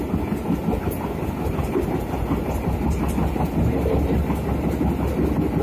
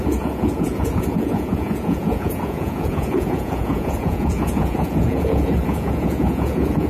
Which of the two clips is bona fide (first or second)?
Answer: first